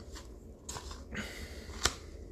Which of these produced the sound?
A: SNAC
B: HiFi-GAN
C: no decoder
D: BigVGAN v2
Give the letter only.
C